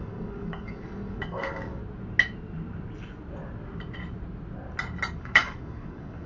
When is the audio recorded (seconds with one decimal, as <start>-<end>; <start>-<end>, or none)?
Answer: 1.8-5.2